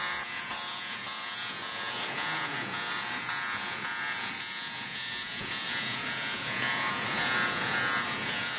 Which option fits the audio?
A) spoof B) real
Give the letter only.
A